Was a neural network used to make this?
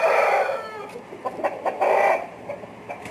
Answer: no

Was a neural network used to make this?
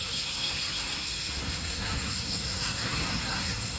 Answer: yes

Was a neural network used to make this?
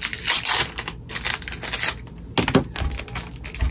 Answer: no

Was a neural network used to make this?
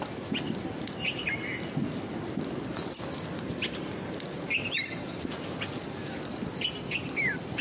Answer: no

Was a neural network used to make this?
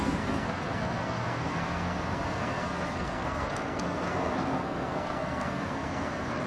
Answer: yes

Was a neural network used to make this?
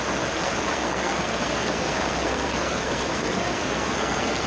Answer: yes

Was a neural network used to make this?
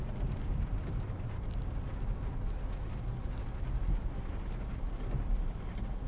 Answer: no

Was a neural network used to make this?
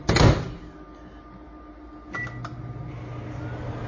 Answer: no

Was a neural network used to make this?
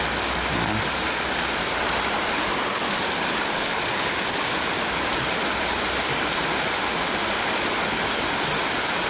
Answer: no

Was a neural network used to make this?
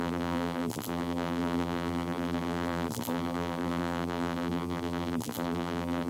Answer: yes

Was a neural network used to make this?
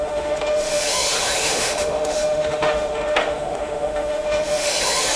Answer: yes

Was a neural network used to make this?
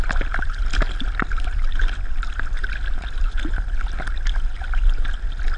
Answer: no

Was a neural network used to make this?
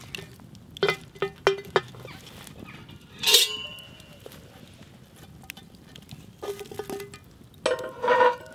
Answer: no